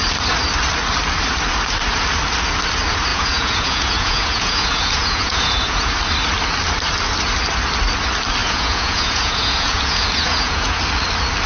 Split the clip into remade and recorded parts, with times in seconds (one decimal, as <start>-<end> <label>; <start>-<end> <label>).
0.0-3.1 recorded; 3.1-5.9 remade; 5.9-8.4 recorded; 8.4-10.8 remade; 10.8-11.5 recorded